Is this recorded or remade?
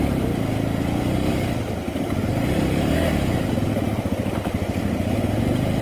recorded